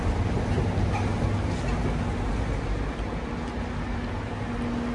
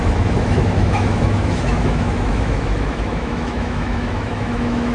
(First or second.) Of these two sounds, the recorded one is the first